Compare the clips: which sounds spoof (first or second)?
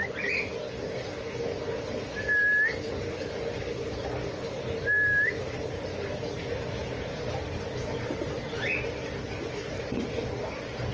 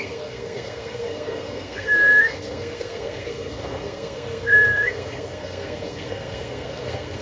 second